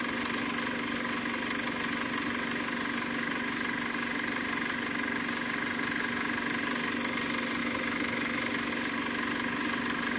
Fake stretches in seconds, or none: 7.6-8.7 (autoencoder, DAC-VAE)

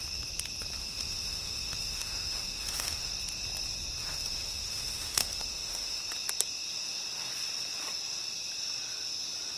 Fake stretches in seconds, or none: 0.8-3.1 (autoencoder, DAC-VAE); 4.0-6.0

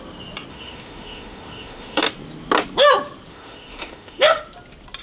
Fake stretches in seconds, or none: 0.5-2.0 (autoencoder, DAC-VAE); 3.3-4.4

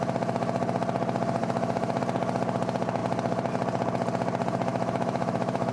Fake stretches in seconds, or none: 1.4-2.0 (autoencoder, DAC-VAE); 4.7-5.7

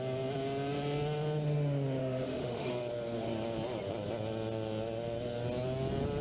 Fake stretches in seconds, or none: 2.0-2.7 (autoencoder, DAC-VAE)

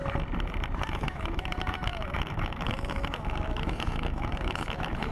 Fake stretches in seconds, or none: 0.8-5.1 (autoencoder, DAC-VAE)

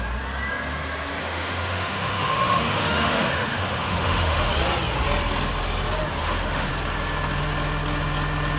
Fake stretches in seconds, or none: 1.2-4.5 (autoencoder, DAC-VAE); 6.2-6.7

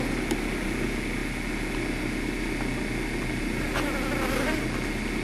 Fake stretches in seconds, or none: none